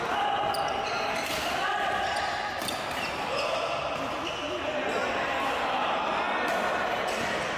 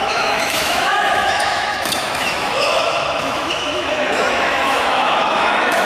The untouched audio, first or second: first